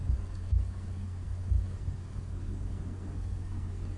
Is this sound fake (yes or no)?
yes